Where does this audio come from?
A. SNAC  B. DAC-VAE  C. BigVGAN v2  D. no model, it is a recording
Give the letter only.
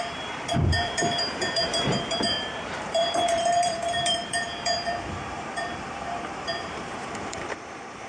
C